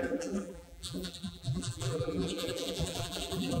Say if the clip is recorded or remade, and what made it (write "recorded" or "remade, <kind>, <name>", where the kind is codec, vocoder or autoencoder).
remade, vocoder, BigVGAN v2